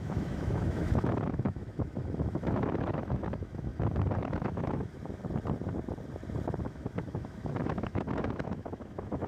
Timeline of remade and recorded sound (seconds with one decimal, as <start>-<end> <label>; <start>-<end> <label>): 0.0-3.7 remade; 3.7-4.2 recorded; 4.2-5.2 remade; 5.2-6.6 recorded; 6.6-9.3 remade